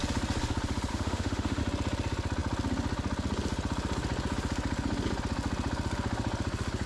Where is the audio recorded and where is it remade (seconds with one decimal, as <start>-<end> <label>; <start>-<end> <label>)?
0.0-0.9 recorded; 0.9-1.6 remade; 1.6-6.9 recorded